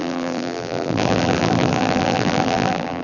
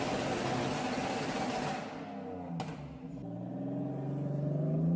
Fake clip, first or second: first